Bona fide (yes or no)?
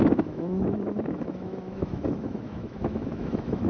no